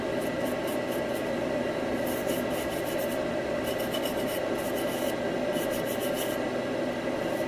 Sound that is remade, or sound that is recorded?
recorded